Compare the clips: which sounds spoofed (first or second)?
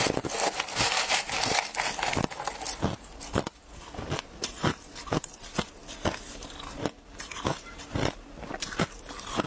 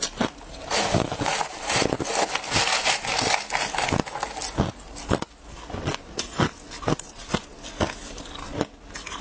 first